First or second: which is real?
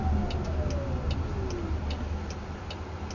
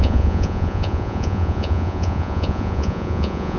first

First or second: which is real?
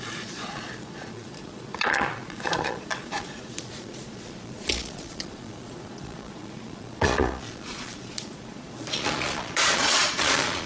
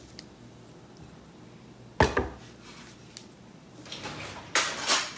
second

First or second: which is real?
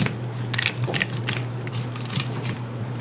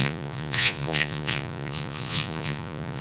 first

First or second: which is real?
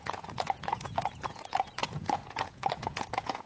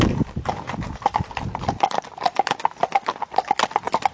second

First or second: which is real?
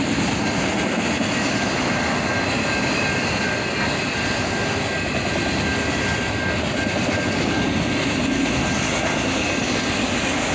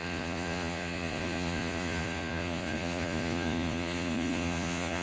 first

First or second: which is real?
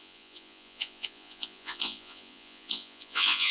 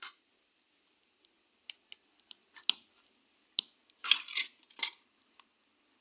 second